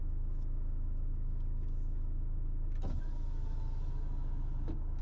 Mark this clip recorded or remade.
recorded